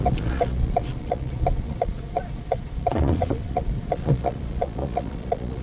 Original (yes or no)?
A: no